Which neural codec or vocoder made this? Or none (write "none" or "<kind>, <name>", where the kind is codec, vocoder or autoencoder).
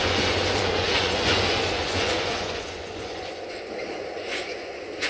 vocoder, Vocos